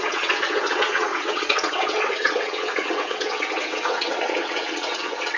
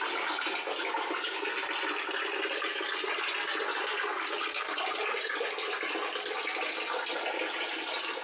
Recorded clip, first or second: second